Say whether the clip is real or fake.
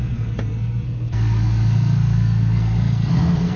fake